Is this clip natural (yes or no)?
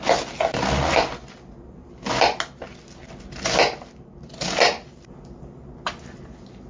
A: yes